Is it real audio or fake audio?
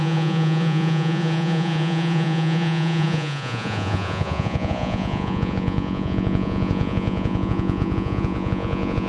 fake